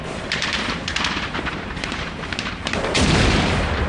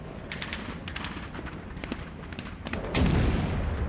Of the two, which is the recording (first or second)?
second